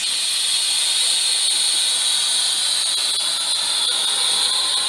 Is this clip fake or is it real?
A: real